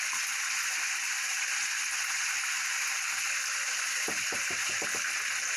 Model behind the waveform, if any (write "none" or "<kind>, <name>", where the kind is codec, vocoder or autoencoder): none